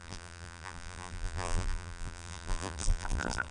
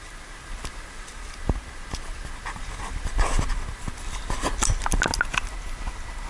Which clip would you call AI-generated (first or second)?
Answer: first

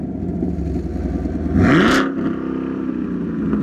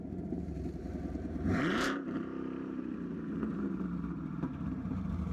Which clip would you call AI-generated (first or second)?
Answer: second